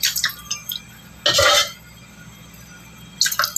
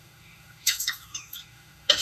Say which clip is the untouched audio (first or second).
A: first